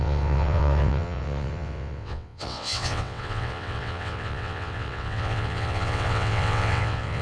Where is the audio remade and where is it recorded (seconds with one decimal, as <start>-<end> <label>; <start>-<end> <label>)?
0.0-7.2 remade